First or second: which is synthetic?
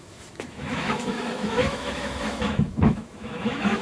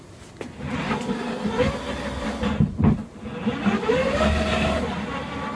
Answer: first